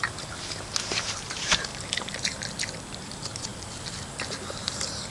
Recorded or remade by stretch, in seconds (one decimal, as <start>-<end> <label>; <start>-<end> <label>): 0.0-1.7 remade; 1.7-3.0 recorded; 3.0-3.5 remade; 3.5-4.6 recorded; 4.6-5.1 remade